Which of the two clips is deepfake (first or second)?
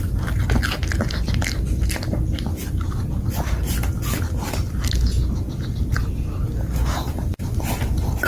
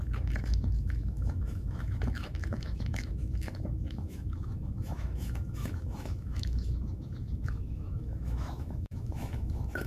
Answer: second